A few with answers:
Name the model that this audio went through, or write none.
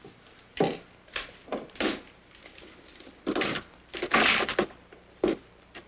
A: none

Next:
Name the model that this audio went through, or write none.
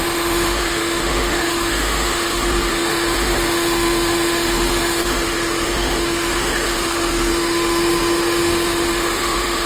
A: autoencoder, DAC-VAE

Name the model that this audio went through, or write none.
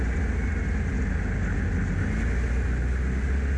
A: none